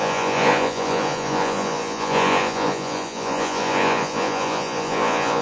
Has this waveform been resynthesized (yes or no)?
yes